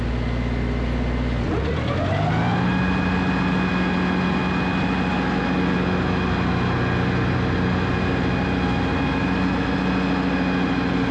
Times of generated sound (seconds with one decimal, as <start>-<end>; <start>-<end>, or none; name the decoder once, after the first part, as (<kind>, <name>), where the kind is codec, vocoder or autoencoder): none